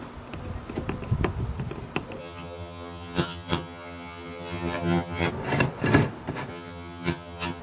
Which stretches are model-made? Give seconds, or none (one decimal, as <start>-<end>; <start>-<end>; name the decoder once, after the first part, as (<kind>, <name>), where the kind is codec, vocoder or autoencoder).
2.2-5.3 (vocoder, HiFi-GAN); 6.5-7.6